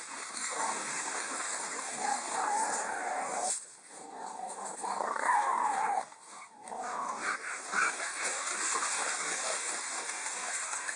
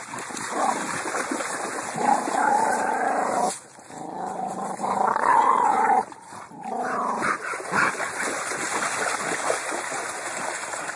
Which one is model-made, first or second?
first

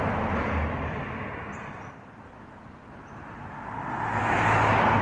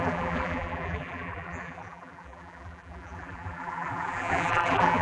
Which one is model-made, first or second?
second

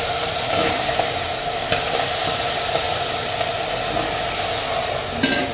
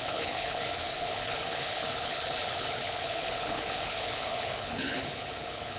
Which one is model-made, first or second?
second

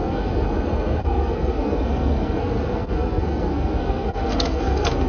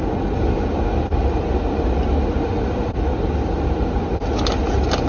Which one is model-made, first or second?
first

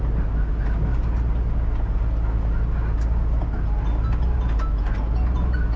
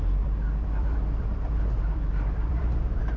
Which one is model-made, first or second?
second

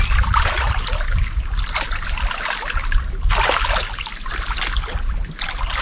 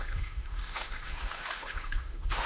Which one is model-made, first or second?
second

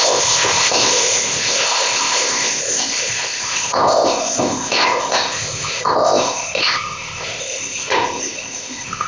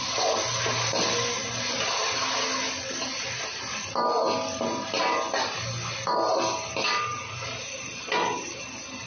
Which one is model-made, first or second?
first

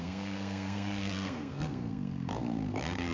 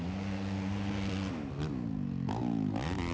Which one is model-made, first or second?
first